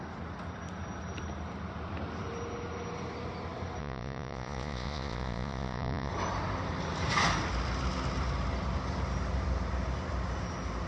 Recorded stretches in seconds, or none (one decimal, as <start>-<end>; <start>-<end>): 0.0-3.8; 6.1-10.9